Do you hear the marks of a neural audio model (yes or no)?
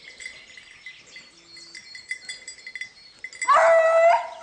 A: no